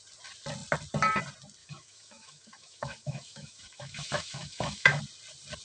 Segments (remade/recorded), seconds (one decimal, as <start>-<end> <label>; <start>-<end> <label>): 0.0-1.6 recorded; 1.6-5.0 remade; 5.0-5.6 recorded